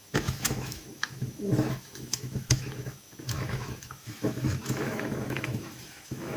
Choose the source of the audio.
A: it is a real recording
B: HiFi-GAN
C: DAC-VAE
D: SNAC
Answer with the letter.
C